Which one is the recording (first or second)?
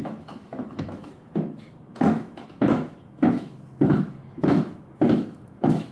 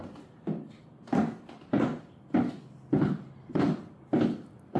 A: second